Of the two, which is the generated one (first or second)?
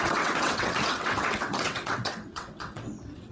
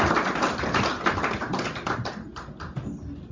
first